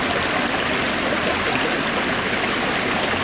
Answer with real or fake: real